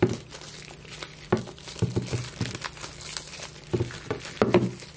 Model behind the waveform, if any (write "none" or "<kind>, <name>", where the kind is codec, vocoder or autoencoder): none